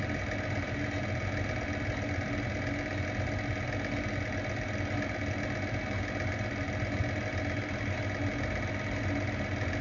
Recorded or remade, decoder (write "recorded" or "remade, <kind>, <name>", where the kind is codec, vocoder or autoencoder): recorded